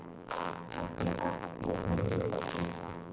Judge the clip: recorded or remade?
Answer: remade